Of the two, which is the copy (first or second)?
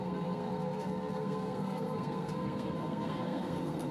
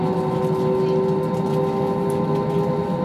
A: first